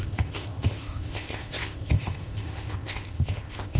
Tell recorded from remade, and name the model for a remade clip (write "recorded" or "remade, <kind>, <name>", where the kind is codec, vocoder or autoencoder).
remade, codec, ZipCodec